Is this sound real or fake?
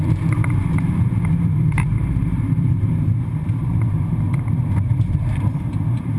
fake